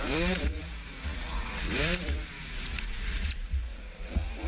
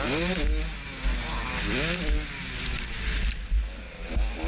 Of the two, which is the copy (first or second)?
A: first